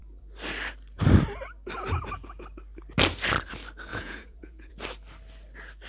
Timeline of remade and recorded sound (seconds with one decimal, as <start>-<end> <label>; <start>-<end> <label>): 0.0-3.9 recorded; 3.9-4.7 remade; 4.7-5.9 recorded